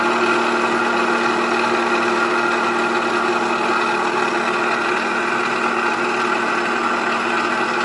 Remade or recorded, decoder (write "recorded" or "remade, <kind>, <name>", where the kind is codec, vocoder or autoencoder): recorded